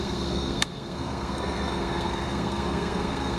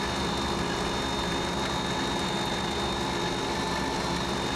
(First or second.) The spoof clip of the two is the first